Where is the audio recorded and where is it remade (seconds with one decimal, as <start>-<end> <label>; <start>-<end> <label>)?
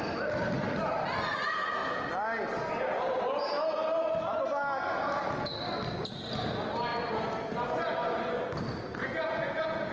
0.0-9.0 recorded; 9.0-9.9 remade